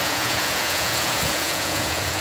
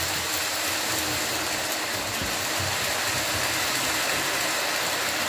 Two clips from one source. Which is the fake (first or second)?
first